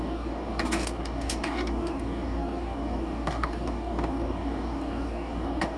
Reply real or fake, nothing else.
fake